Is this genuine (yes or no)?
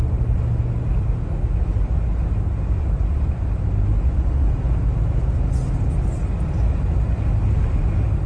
yes